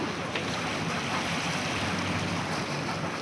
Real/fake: real